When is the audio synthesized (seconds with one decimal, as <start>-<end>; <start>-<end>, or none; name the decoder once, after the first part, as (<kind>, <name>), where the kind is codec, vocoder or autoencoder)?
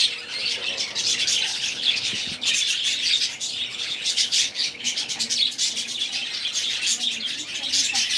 1.5-2.5 (codec, HILCodec); 3.7-5.2